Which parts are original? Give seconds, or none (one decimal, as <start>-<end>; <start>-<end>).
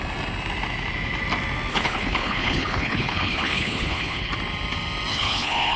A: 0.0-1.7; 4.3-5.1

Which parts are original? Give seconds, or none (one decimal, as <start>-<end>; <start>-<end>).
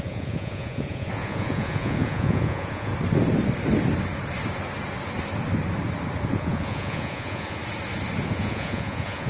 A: 2.9-6.3; 7.6-8.3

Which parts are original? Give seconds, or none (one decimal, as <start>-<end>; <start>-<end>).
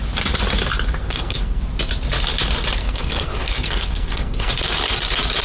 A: 0.0-1.0; 1.6-2.8; 4.5-5.4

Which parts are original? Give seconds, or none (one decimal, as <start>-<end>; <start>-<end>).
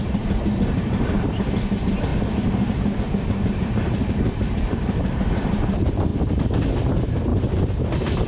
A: 2.1-3.0; 6.1-6.6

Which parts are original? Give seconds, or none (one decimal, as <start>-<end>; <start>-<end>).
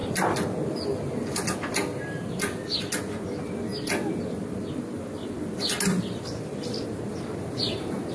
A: 0.0-8.1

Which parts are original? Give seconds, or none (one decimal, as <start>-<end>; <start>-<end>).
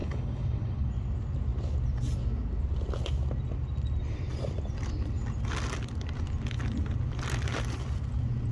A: 0.9-8.5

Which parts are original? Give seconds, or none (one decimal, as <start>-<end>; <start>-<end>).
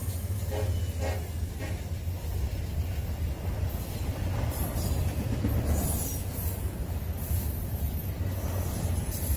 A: 0.0-9.4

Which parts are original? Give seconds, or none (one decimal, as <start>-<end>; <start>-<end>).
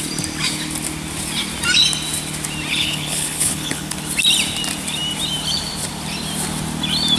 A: 0.0-2.7; 4.0-7.2